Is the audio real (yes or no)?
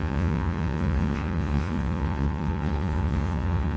no